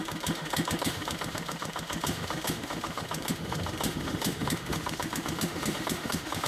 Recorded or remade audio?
remade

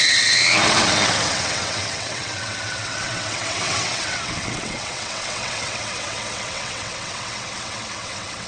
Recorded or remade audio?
remade